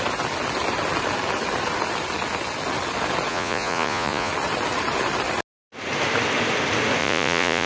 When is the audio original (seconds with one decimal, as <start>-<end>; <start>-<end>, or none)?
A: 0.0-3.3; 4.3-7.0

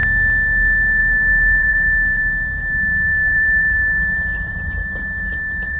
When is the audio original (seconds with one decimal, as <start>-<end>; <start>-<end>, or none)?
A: 0.0-1.0

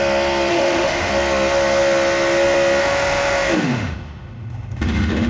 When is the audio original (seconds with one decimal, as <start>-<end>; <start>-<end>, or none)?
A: 0.0-0.5; 1.1-2.8